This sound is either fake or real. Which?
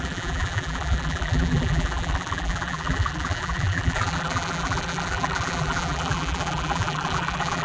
fake